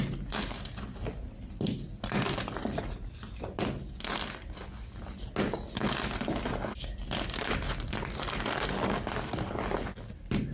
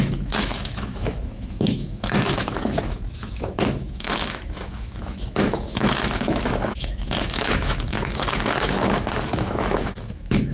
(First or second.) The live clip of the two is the first